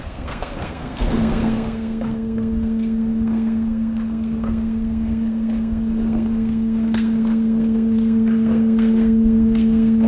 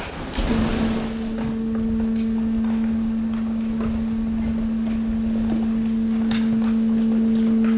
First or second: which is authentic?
second